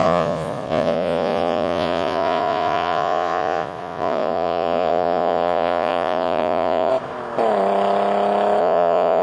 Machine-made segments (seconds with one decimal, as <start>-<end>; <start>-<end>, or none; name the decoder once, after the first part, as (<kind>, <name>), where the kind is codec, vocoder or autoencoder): 0.0-6.9 (vocoder, Vocos); 8.6-9.2